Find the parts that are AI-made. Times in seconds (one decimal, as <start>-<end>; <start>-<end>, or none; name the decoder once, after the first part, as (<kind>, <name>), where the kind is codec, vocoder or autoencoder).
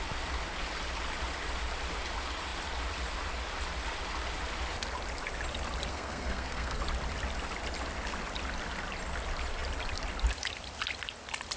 5.9-6.8 (codec, SNAC)